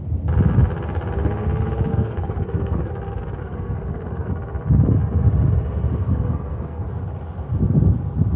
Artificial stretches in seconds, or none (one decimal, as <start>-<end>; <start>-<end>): 1.9-2.9; 3.4-4.3; 5.9-7.0